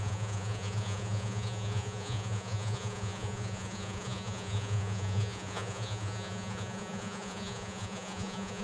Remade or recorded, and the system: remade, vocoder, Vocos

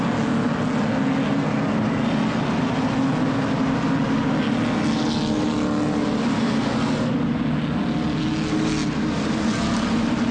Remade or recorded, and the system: recorded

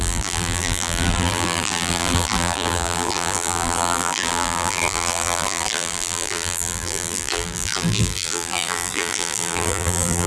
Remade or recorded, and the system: remade, vocoder, BigVGAN v2